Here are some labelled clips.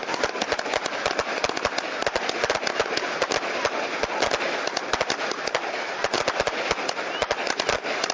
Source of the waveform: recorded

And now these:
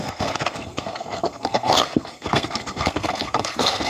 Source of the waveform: remade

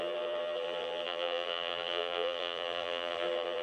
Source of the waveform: remade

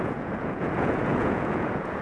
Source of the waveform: remade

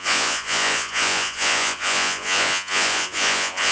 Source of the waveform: remade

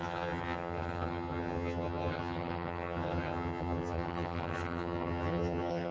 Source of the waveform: remade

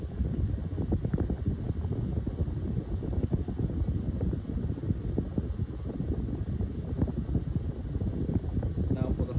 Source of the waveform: recorded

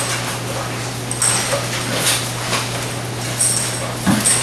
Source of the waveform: recorded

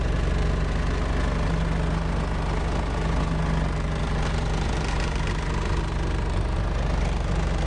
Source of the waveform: recorded